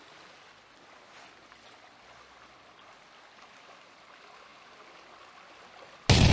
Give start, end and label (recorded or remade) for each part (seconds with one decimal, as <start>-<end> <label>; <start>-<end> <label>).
0.0-6.3 recorded